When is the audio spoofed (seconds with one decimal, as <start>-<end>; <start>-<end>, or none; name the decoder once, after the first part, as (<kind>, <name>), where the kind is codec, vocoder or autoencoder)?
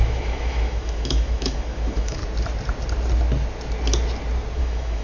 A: 0.0-2.2 (autoencoder, DAC-VAE); 4.6-5.0